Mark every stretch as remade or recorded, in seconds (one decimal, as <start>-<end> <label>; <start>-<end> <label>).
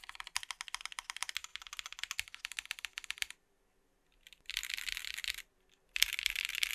0.0-6.7 recorded